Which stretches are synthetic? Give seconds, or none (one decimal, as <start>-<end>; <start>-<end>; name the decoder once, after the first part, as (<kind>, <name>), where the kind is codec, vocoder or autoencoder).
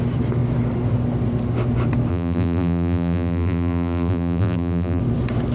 2.1-5.0 (vocoder, BigVGAN v2)